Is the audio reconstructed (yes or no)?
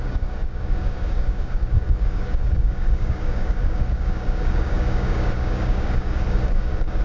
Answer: yes